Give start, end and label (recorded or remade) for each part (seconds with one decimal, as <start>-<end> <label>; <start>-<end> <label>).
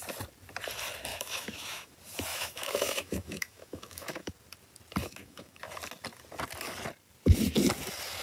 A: 0.0-1.1 recorded; 1.1-1.9 remade; 1.9-2.3 recorded; 2.3-4.3 remade; 4.3-5.0 recorded; 5.0-5.6 remade; 5.6-8.2 recorded